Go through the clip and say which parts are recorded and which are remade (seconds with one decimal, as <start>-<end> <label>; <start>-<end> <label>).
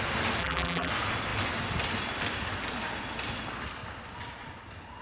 0.0-0.4 recorded; 0.4-0.9 remade; 0.9-5.0 recorded